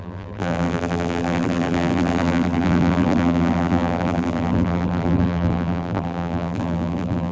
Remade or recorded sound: remade